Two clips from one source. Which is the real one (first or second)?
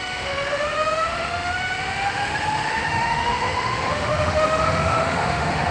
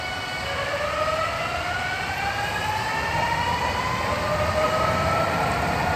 second